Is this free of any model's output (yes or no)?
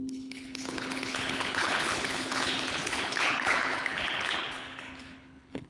no